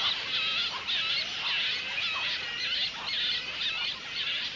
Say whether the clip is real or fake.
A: real